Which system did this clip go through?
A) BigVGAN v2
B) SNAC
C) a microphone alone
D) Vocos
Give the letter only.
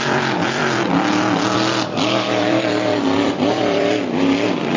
A